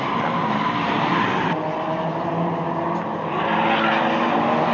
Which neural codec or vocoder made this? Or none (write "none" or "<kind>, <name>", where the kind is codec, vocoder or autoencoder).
none